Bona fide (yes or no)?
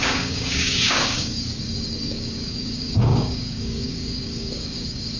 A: no